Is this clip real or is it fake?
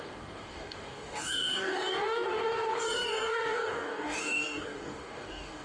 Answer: fake